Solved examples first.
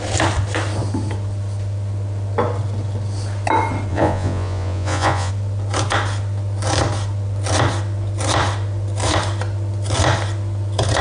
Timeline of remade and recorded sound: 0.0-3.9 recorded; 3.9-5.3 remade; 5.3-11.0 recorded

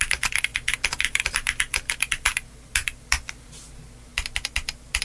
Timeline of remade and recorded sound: 0.0-5.0 recorded

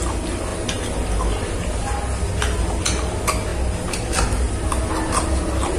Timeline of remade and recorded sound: 0.0-5.8 recorded

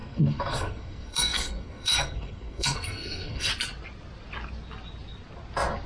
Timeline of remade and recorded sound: 0.0-3.5 remade; 3.5-5.9 recorded

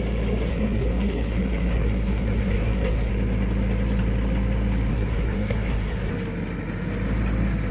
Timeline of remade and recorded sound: 0.0-0.5 recorded; 0.5-3.1 remade; 3.1-4.9 recorded; 4.9-6.1 remade; 6.1-7.7 recorded